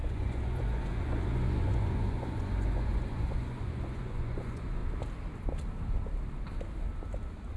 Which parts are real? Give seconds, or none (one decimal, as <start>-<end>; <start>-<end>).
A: 4.8-7.6